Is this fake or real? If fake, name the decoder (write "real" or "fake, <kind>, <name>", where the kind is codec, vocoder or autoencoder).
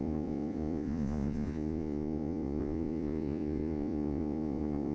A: fake, vocoder, Vocos